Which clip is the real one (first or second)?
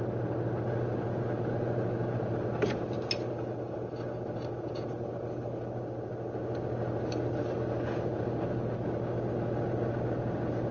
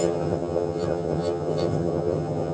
first